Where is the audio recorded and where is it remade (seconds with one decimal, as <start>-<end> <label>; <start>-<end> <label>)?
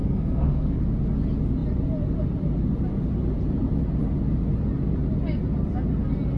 0.0-0.8 remade; 0.8-6.4 recorded